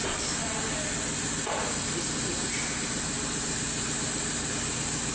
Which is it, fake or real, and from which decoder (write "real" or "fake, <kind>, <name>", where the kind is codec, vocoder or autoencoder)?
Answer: real